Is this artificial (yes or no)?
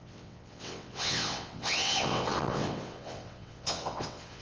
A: yes